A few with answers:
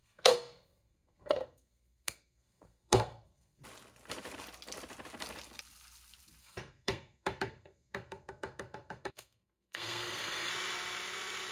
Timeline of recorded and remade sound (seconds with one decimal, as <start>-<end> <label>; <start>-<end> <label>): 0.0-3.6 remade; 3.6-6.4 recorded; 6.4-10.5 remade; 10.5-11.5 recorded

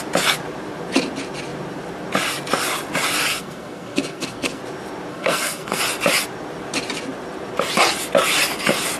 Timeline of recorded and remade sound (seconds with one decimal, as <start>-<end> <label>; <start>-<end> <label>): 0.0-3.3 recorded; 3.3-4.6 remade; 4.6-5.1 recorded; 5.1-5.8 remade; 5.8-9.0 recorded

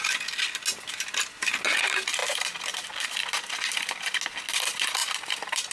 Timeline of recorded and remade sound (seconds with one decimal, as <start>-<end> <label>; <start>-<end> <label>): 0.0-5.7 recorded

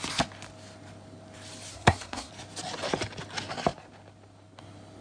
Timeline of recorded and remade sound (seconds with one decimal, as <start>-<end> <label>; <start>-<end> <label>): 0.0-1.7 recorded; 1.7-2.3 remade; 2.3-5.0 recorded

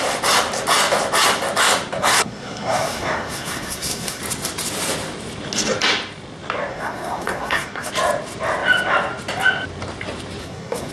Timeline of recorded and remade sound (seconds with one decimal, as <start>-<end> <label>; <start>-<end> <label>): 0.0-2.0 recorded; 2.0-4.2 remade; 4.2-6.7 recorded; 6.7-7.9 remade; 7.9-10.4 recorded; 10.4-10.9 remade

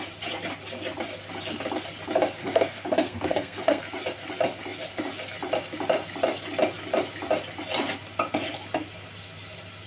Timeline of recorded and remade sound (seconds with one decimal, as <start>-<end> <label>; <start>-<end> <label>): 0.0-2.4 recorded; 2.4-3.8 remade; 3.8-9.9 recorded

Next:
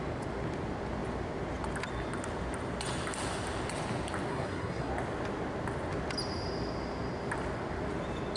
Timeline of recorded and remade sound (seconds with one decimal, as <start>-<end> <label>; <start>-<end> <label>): 0.0-4.3 recorded; 4.3-4.9 remade; 4.9-8.4 recorded

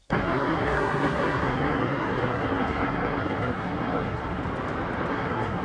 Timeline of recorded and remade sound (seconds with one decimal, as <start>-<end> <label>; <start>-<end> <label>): 0.0-4.4 remade; 4.4-5.1 recorded; 5.1-5.6 remade